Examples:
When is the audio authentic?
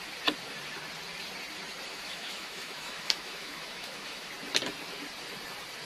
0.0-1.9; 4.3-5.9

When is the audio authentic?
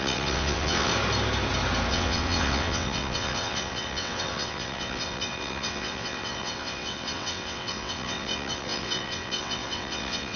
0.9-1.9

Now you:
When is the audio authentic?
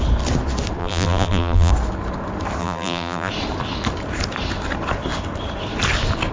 0.0-0.8; 1.7-2.6; 3.3-6.3